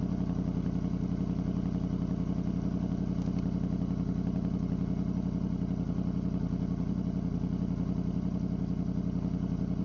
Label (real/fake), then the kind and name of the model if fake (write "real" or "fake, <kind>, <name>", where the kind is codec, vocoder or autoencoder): real